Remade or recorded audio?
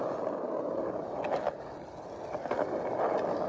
recorded